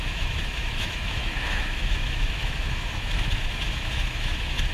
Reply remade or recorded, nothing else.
remade